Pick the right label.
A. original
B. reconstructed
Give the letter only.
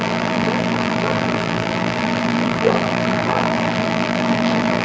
B